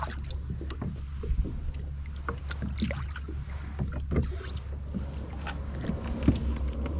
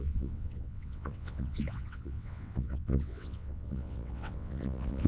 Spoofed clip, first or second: second